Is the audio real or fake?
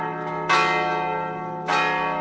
real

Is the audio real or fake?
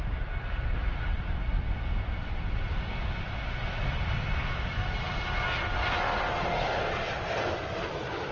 real